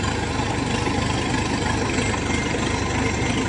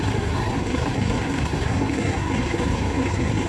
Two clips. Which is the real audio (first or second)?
first